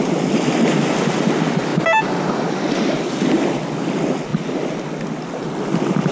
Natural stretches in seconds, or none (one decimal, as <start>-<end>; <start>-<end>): 0.0-6.1